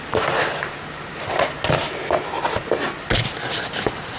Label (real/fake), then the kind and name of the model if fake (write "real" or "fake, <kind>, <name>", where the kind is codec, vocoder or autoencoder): real